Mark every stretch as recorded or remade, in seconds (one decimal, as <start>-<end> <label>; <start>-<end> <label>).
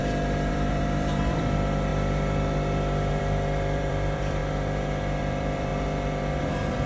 0.0-0.5 recorded; 0.5-1.9 remade; 1.9-3.1 recorded; 3.1-4.4 remade; 4.4-5.2 recorded; 5.2-5.7 remade; 5.7-6.4 recorded; 6.4-6.9 remade